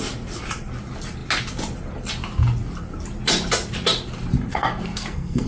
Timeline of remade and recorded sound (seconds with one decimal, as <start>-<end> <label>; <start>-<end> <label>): 0.0-4.5 recorded; 4.5-5.5 remade